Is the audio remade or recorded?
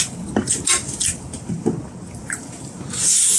recorded